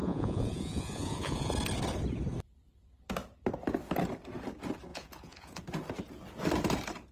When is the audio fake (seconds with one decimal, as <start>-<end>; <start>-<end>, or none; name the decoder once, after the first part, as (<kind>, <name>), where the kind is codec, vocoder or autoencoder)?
0.0-1.5 (vocoder, Vocos); 4.9-5.6